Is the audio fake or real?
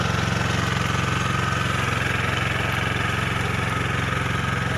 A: real